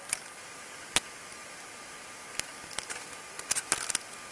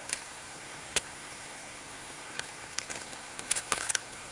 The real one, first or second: first